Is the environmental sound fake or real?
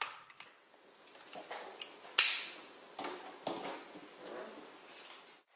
real